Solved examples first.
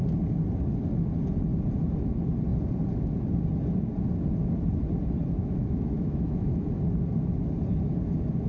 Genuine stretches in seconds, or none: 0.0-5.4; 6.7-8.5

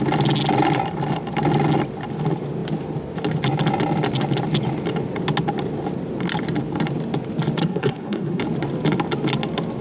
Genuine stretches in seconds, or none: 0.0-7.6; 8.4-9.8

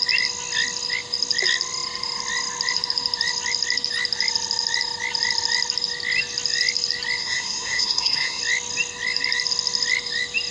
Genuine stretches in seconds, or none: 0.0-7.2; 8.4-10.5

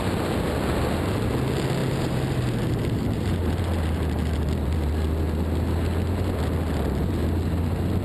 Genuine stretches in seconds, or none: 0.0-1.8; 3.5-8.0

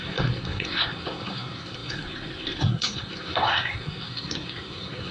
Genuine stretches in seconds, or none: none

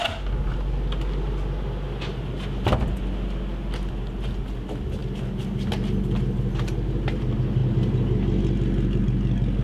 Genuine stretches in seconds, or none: 0.0-9.6